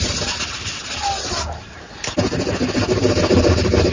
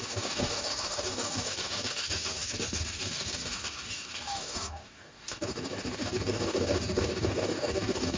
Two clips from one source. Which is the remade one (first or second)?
second